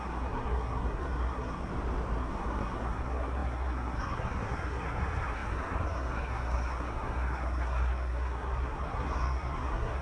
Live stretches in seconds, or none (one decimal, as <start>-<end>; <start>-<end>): 1.7-2.2

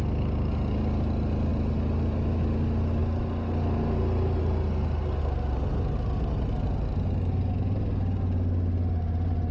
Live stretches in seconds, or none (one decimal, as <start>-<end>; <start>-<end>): 0.0-9.5